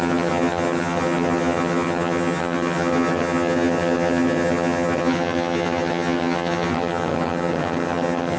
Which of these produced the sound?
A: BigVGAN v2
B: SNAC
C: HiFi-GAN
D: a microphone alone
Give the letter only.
C